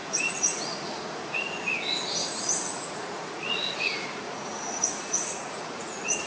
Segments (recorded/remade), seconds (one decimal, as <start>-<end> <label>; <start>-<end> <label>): 0.0-1.5 remade; 1.5-2.2 recorded; 2.2-6.3 remade